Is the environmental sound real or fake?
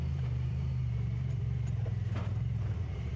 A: fake